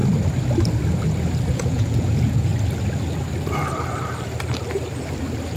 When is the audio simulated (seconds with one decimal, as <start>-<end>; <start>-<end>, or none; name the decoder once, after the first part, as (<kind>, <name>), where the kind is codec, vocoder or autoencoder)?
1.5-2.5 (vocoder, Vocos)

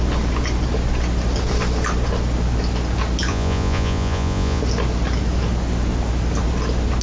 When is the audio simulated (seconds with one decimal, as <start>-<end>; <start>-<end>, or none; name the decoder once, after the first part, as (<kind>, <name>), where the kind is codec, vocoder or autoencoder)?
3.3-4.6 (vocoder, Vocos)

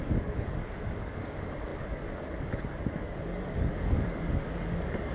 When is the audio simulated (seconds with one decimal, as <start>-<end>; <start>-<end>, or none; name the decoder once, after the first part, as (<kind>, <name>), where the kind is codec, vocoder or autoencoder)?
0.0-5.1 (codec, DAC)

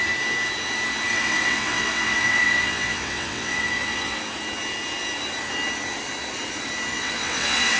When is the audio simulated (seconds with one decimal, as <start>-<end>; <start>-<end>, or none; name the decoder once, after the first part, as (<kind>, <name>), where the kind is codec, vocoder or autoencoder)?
1.1-4.2 (vocoder, WaveNeXt); 6.9-7.8